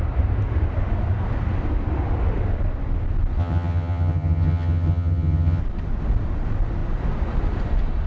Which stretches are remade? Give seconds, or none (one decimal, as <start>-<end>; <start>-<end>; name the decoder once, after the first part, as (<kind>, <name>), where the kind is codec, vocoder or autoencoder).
3.4-5.6 (vocoder, HiFi-GAN)